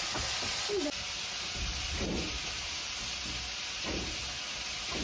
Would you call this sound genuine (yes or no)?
yes